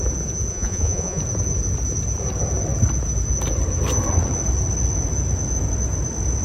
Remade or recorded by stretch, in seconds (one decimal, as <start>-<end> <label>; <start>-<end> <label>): 0.0-0.5 recorded; 0.5-1.2 remade; 1.2-6.4 recorded